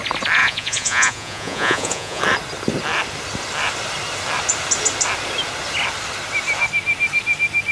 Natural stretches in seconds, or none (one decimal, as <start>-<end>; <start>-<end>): 0.0-0.4; 2.2-7.7